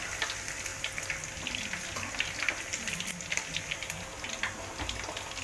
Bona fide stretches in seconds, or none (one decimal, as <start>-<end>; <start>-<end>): 0.0-5.4